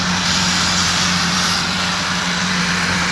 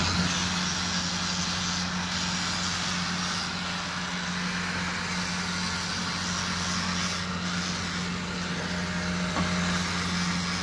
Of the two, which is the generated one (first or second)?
first